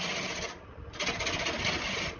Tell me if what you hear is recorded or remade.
recorded